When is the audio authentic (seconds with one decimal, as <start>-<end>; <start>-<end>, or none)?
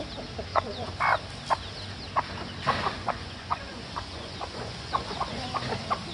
0.0-0.5; 1.0-2.9; 5.4-6.1